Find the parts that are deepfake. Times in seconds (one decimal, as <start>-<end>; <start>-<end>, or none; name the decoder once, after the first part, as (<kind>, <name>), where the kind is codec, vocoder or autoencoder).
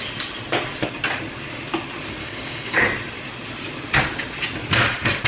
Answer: 2.2-2.8 (codec, DAC)